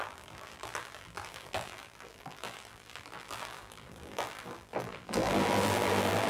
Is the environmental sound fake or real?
fake